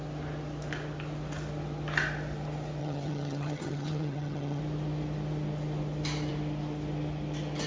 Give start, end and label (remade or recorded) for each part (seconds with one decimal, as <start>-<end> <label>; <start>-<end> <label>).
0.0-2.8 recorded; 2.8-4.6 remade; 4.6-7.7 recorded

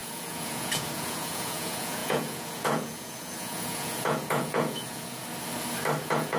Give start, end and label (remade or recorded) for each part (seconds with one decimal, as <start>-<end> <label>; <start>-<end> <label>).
0.0-5.2 remade; 5.2-6.0 recorded; 6.0-6.4 remade

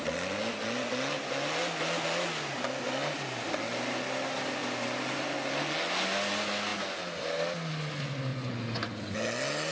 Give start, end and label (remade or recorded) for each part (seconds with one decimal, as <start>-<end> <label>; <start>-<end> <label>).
0.0-8.3 recorded; 8.3-8.9 remade; 8.9-9.7 recorded

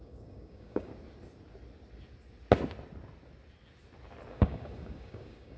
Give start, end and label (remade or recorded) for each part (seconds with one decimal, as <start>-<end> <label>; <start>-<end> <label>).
0.0-0.9 remade; 0.9-4.3 recorded; 4.3-5.6 remade